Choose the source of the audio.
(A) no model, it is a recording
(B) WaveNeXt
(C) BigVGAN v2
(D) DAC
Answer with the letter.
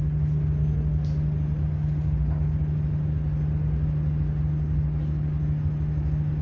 A